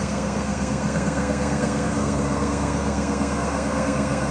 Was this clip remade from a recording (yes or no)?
yes